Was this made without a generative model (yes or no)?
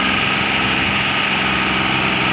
yes